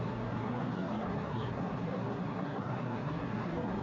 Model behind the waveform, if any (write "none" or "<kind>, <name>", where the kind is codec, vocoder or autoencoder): codec, SNAC